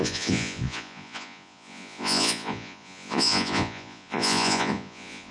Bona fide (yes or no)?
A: no